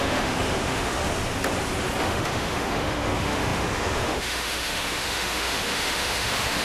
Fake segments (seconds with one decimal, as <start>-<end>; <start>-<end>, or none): 0.0-1.0; 2.0-6.6